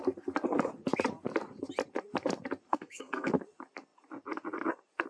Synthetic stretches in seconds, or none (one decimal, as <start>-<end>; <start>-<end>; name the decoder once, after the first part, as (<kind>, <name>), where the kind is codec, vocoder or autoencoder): 2.7-3.3 (codec, SNAC)